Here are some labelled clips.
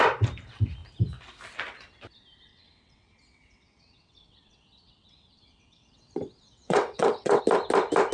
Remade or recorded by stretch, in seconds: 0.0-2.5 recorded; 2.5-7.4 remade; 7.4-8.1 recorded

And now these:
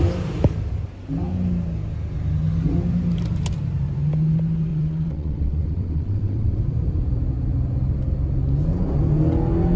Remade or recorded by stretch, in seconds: 0.0-4.7 recorded; 4.7-6.6 remade; 6.6-9.8 recorded

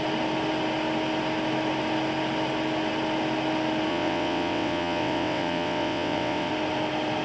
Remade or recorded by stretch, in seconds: 0.0-3.9 recorded; 3.9-6.5 remade; 6.5-7.2 recorded

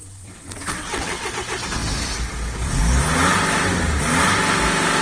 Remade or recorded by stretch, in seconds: 0.0-1.3 remade; 1.3-5.0 recorded

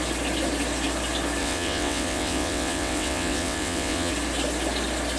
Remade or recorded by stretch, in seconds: 0.0-1.4 recorded; 1.4-4.1 remade; 4.1-5.2 recorded

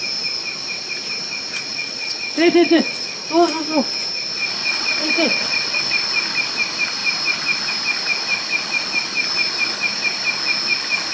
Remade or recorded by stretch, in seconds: 0.0-1.7 recorded; 1.7-3.0 remade; 3.0-4.6 recorded; 4.6-5.8 remade; 5.8-11.1 recorded

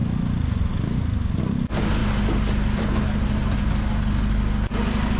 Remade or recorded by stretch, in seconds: 0.0-5.2 recorded

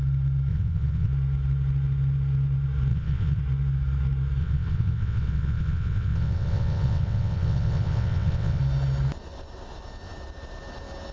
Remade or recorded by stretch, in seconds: 0.0-0.5 recorded; 0.5-1.1 remade; 1.1-2.9 recorded; 2.9-3.4 remade; 3.4-4.4 recorded; 4.4-8.6 remade; 8.6-11.1 recorded